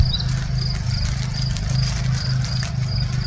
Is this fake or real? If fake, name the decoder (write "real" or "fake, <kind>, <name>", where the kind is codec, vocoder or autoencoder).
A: real